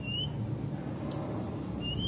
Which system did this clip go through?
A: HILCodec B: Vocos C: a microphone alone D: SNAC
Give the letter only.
C